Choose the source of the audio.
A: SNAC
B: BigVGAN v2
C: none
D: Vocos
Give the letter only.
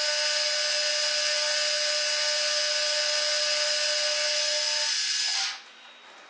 C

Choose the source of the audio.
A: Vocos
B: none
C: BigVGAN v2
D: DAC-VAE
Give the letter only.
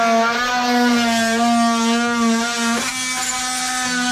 B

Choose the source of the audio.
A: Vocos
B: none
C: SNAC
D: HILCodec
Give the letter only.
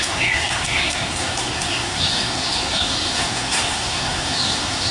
C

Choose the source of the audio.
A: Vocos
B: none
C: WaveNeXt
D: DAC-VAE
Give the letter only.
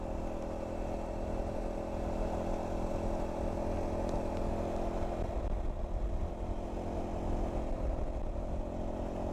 B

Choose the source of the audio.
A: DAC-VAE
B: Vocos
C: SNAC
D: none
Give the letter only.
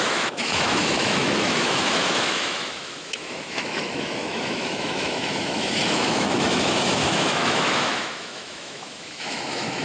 A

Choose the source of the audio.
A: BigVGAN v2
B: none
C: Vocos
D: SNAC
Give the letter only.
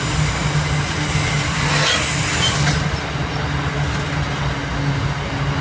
B